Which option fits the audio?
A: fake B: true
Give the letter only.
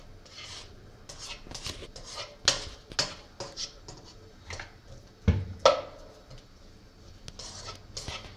B